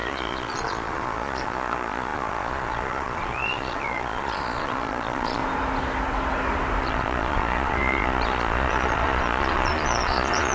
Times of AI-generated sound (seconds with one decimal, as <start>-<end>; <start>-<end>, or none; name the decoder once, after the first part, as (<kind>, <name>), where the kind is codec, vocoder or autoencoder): 0.0-5.4 (vocoder, Vocos); 6.8-10.5